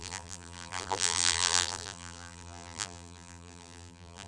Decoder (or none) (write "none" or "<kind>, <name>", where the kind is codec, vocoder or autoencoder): vocoder, BigVGAN v2